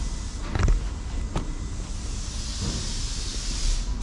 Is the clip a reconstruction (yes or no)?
no